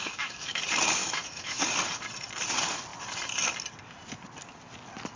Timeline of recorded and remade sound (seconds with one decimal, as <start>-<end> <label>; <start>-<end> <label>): 0.0-0.6 remade; 0.6-1.0 recorded; 1.0-1.6 remade; 1.6-5.2 recorded